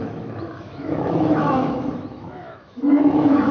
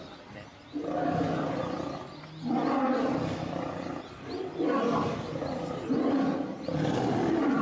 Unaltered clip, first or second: second